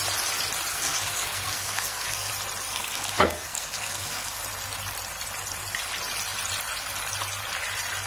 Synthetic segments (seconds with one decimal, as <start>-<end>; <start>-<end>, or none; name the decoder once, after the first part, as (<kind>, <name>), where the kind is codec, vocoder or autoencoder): 0.7-2.3 (codec, SNAC); 2.7-4.4